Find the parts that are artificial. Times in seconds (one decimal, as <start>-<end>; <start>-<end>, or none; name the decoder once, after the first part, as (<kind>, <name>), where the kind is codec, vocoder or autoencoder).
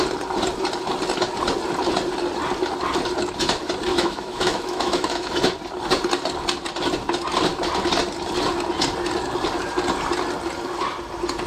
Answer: 3.9-5.3 (autoencoder, DAC-VAE)